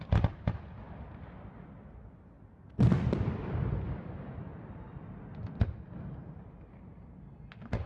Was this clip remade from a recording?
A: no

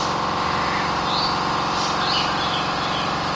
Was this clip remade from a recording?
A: no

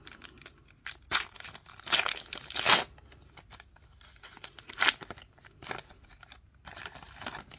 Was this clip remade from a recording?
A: no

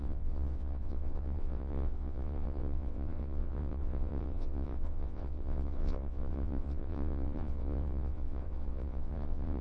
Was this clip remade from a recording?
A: yes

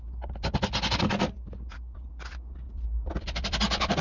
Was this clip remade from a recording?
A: no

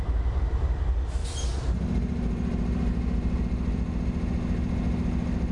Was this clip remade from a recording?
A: no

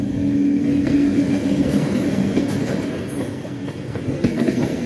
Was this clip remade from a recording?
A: yes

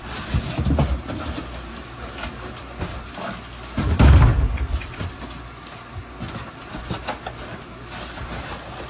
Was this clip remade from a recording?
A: no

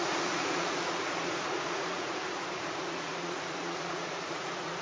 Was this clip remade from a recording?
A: yes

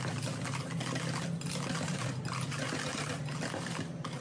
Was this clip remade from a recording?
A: no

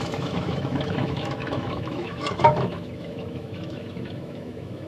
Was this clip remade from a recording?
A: yes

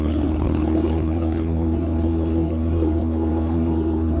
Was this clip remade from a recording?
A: yes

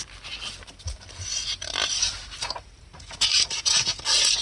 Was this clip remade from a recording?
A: no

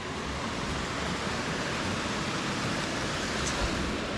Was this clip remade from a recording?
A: no